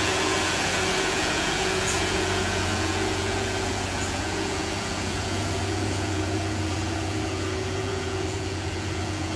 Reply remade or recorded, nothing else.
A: remade